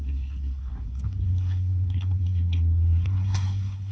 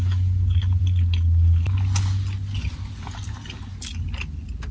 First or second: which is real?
second